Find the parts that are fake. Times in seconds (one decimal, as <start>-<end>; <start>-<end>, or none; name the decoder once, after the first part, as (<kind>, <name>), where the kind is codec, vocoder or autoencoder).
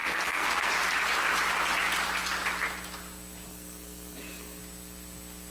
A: 0.0-0.7 (codec, SNAC); 3.5-4.6